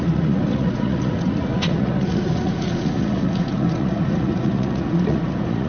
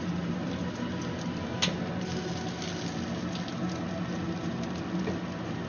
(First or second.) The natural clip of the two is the second